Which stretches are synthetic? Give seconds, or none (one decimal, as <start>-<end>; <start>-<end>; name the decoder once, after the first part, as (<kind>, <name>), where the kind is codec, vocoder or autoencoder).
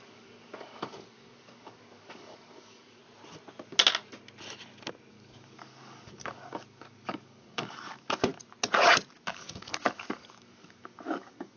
0.0-3.0 (codec, DAC); 5.1-8.3; 9.3-11.6